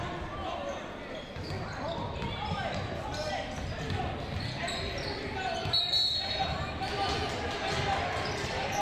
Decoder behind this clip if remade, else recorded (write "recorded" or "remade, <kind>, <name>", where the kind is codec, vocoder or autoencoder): recorded